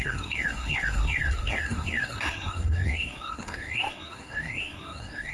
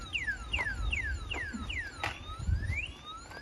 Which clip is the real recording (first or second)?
second